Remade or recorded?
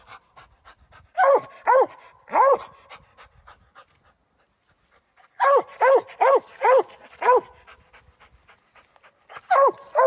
recorded